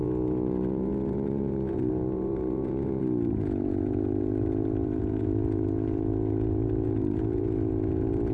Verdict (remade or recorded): remade